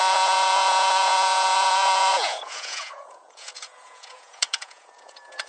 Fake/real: fake